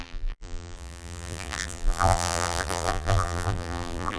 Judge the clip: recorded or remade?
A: remade